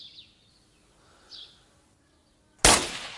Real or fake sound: real